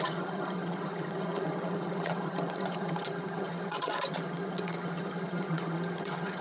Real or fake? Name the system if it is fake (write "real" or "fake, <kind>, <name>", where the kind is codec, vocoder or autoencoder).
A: fake, vocoder, HiFi-GAN